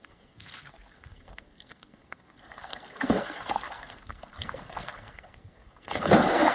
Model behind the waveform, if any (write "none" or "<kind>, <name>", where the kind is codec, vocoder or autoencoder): codec, SNAC